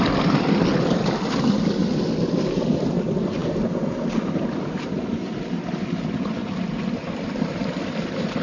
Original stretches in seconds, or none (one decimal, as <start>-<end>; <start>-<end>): 0.0-8.4